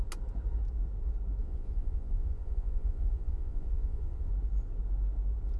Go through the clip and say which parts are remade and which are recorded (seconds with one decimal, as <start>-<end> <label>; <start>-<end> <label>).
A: 0.0-1.4 recorded; 1.4-4.3 remade; 4.3-5.6 recorded